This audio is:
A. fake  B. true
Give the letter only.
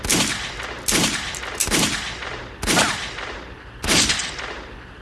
B